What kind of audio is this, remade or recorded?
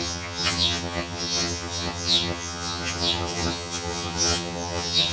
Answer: remade